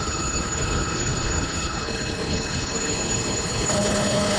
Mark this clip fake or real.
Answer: fake